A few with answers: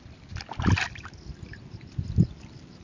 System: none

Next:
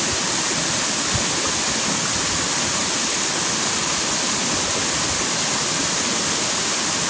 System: none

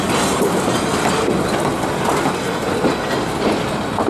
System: none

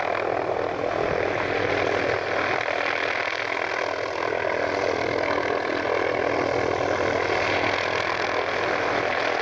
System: none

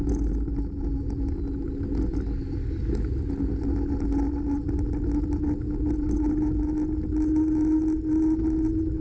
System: none